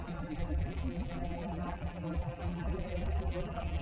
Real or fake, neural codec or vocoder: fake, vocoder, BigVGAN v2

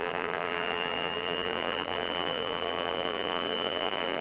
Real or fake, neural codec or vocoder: fake, vocoder, BigVGAN v2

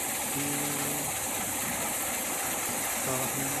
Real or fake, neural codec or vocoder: real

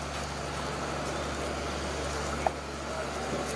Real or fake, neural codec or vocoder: real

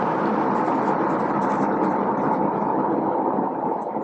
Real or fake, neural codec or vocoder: real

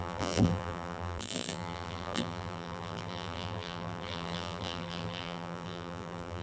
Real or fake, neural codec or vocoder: fake, vocoder, BigVGAN v2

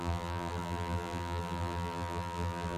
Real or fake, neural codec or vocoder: fake, vocoder, BigVGAN v2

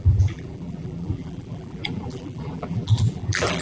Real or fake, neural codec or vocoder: fake, vocoder, BigVGAN v2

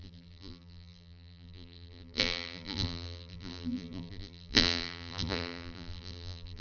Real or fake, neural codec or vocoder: fake, vocoder, BigVGAN v2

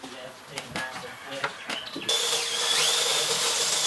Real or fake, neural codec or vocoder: fake, vocoder, BigVGAN v2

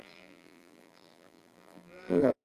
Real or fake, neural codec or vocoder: fake, vocoder, BigVGAN v2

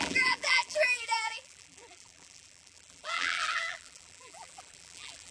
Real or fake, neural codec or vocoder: fake, vocoder, BigVGAN v2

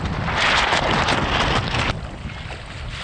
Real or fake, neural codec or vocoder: real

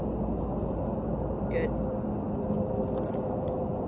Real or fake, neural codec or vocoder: real